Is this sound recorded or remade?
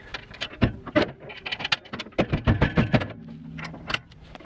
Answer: recorded